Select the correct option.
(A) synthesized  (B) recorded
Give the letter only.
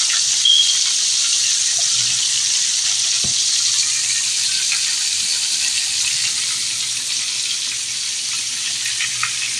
B